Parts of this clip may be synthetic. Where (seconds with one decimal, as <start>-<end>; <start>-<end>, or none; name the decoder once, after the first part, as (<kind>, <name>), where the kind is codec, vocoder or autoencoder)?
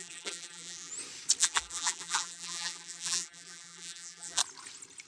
0.0-0.9 (vocoder, BigVGAN v2); 1.4-4.4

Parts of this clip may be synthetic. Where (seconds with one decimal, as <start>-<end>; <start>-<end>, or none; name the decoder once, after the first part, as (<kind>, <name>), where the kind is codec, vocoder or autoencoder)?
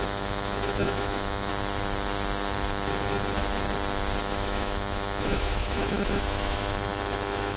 0.0-1.5 (autoencoder, DAC-VAE); 4.2-7.6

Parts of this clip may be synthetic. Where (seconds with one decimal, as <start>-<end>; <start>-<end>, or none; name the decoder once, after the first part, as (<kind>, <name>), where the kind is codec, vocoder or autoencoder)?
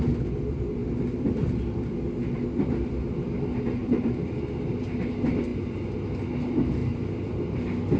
3.8-4.3 (vocoder, BigVGAN v2); 6.8-8.0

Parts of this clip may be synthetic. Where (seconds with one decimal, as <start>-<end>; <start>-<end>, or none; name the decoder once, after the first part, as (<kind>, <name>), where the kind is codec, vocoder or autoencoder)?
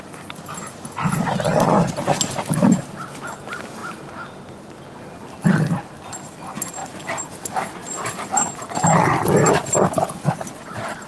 none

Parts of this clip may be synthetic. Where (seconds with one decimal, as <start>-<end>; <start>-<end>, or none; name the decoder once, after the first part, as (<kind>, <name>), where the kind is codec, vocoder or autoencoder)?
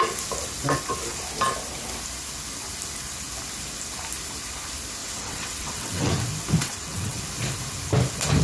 5.0-6.1 (vocoder, WaveNeXt); 6.6-7.2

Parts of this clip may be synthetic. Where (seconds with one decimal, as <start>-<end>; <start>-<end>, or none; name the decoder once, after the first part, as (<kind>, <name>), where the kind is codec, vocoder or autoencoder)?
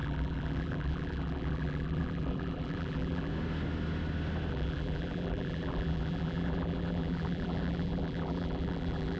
0.0-3.3 (vocoder, BigVGAN v2); 4.5-9.2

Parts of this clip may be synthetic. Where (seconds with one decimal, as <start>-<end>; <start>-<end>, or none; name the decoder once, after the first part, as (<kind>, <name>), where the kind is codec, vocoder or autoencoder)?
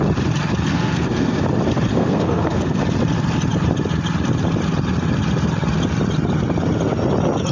0.7-1.4 (codec, SNAC); 1.9-2.8